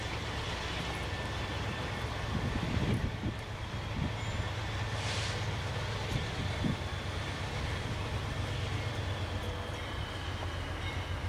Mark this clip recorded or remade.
recorded